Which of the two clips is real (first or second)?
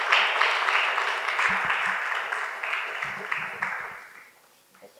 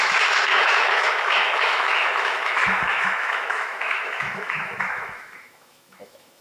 first